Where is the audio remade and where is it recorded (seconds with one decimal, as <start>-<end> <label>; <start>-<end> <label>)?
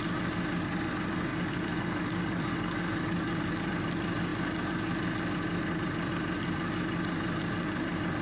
0.0-1.3 recorded; 1.3-3.7 remade; 3.7-8.2 recorded